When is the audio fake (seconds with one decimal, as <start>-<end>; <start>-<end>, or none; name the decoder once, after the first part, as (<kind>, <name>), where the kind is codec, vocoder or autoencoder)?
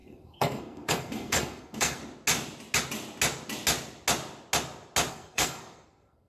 0.0-2.0 (codec, SNAC); 5.1-6.3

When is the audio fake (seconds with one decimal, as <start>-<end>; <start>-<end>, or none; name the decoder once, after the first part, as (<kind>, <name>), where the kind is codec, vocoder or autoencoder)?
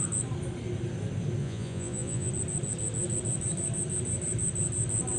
1.4-2.3 (vocoder, Vocos)